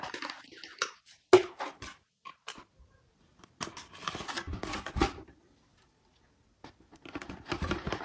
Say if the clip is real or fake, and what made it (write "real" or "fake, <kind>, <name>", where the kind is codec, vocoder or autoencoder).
real